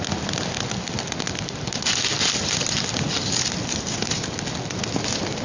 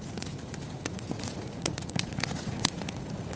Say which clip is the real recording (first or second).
first